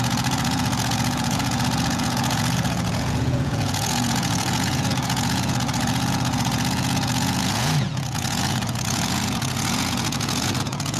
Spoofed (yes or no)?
yes